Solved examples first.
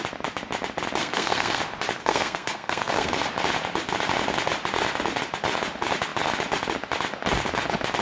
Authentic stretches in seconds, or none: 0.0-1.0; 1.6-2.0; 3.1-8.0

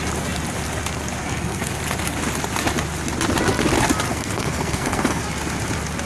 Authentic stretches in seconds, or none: 0.0-1.2; 1.7-4.1; 5.2-6.1

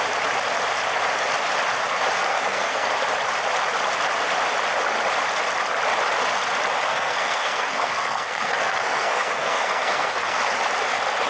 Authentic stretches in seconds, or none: 0.0-2.3; 2.9-6.9; 10.4-11.3

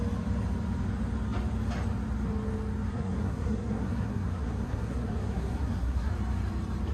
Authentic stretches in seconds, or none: 0.0-2.9; 6.1-6.9

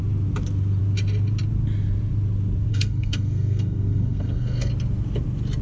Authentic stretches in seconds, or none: 0.0-2.7; 4.7-5.6